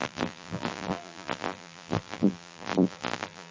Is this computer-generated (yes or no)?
yes